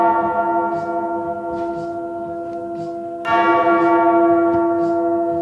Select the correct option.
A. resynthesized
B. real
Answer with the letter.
B